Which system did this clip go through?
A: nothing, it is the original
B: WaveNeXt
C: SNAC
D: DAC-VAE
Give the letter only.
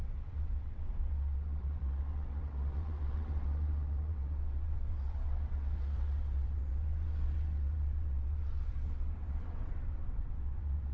B